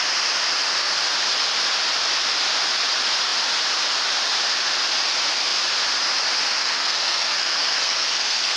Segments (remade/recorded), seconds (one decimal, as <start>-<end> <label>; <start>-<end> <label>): 0.0-6.6 recorded; 6.6-8.6 remade

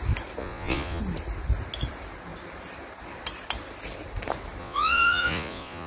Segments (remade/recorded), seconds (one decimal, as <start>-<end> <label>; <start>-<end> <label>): 0.0-0.4 recorded; 0.4-1.0 remade; 1.0-4.6 recorded; 4.6-5.9 remade

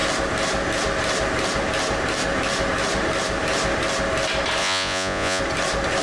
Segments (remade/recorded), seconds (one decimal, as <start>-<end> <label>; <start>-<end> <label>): 0.0-4.6 recorded; 4.6-5.4 remade; 5.4-6.0 recorded

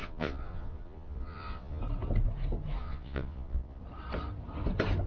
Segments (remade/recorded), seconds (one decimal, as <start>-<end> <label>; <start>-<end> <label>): 0.0-1.8 remade; 1.8-2.8 recorded; 2.8-3.8 remade; 3.8-5.1 recorded

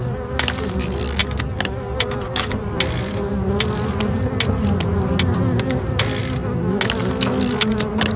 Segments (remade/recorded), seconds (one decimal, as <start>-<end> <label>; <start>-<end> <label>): 0.0-8.2 recorded